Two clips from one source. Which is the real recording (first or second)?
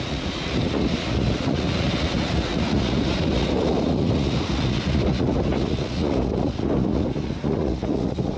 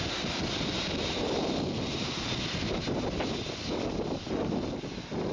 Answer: second